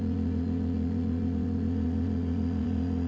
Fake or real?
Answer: fake